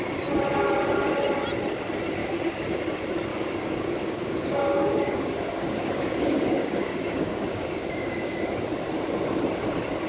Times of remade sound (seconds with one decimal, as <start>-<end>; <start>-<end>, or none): 2.2-2.8; 3.3-8.6

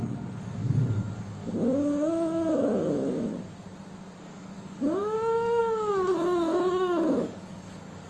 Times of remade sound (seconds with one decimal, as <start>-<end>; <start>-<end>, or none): 0.0-3.3; 4.2-8.1

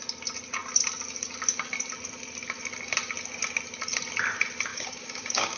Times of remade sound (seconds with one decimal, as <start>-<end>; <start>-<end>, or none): 4.7-5.6

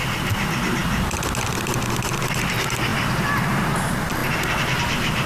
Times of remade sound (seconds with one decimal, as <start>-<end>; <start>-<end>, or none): none